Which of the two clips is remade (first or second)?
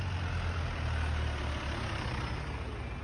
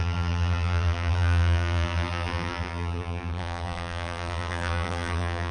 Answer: second